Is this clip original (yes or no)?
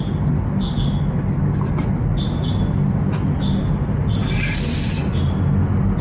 yes